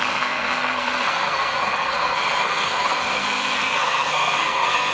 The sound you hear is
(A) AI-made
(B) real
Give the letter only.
A